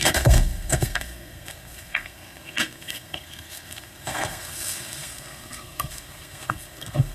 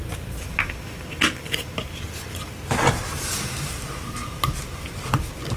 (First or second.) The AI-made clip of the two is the first